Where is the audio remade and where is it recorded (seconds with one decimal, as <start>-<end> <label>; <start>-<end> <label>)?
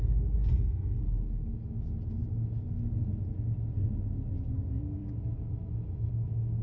0.0-0.5 recorded; 0.5-1.0 remade; 1.0-6.6 recorded